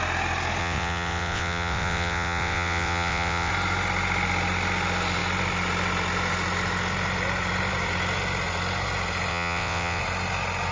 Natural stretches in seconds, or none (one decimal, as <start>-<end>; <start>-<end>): 0.0-0.6; 3.5-9.3; 10.0-10.7